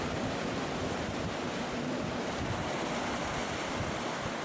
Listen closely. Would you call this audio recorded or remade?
remade